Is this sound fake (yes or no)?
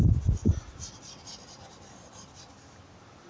no